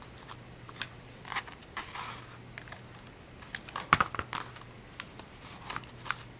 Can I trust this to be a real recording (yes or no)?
yes